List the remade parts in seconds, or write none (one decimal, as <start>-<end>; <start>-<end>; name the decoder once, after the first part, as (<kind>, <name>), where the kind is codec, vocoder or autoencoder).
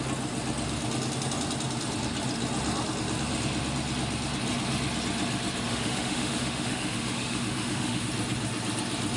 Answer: 5.7-8.1 (autoencoder, DAC-VAE)